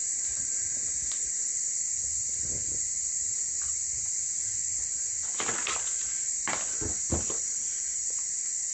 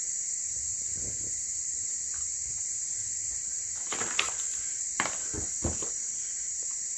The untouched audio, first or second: first